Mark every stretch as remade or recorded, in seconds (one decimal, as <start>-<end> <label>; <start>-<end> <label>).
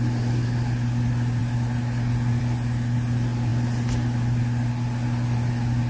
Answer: 0.0-5.9 recorded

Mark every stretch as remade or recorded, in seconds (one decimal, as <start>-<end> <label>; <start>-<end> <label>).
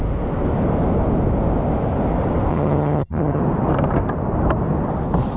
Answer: 0.0-2.5 recorded; 2.5-3.4 remade; 3.4-5.4 recorded